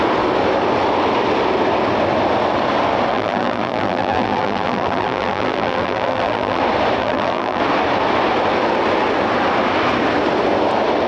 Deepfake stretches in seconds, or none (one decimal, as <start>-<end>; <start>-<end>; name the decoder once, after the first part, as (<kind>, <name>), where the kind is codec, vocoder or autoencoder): 3.1-6.6 (vocoder, BigVGAN v2); 7.0-7.6